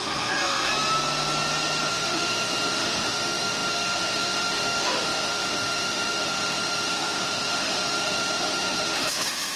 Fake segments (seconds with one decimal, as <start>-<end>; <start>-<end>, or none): 0.0-0.7; 1.9-9.6